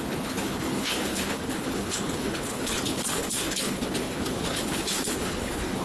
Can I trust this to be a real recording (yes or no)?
no